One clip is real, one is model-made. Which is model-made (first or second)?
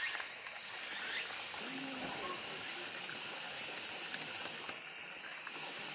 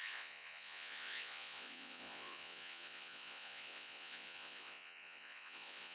second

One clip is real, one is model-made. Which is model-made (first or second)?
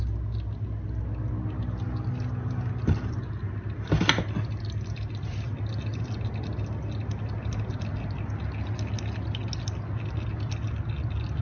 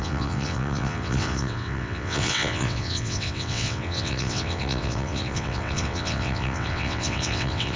second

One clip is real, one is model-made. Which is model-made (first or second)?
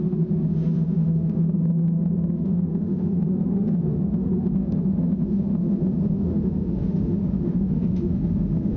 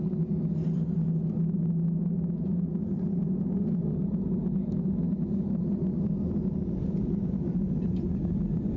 first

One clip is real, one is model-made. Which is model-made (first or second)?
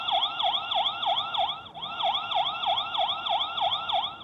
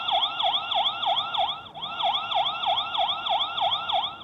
first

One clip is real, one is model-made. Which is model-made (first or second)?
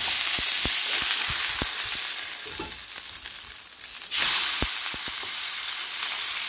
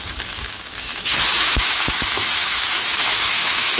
second